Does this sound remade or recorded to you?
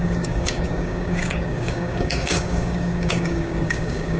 remade